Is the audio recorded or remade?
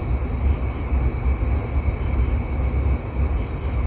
recorded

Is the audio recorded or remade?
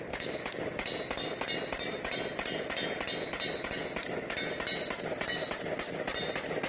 recorded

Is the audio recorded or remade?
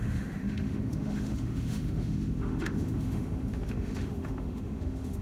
remade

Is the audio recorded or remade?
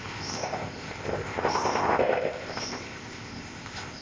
remade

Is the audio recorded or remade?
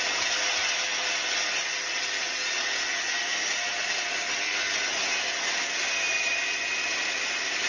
recorded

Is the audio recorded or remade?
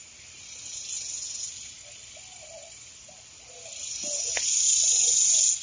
recorded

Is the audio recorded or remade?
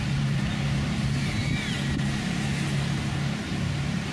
recorded